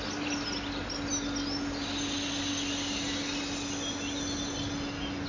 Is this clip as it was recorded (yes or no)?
yes